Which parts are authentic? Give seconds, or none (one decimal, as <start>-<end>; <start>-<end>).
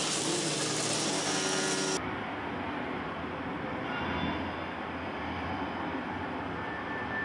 0.0-7.2